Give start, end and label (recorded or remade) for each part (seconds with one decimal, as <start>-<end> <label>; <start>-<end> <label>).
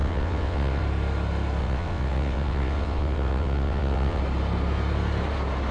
0.0-0.8 remade; 0.8-1.6 recorded; 1.6-4.2 remade; 4.2-5.7 recorded